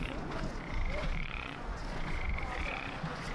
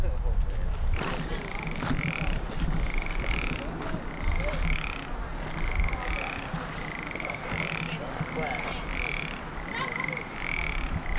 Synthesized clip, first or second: first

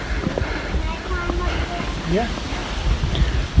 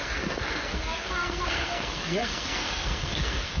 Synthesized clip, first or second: second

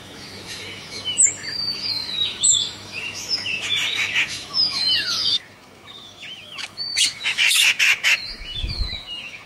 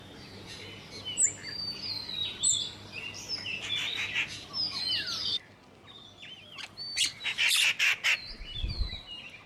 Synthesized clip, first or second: first